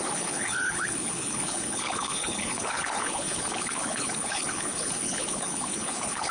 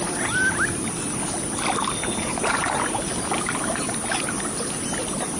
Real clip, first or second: second